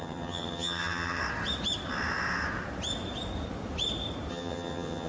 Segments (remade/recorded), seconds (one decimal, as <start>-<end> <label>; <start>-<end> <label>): 0.0-1.2 remade; 1.2-4.3 recorded; 4.3-5.1 remade